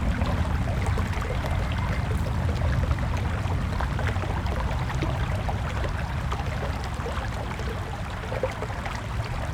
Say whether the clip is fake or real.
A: real